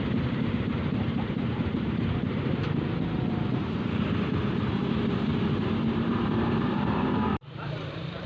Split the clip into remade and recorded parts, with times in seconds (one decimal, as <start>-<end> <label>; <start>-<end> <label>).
0.0-8.3 remade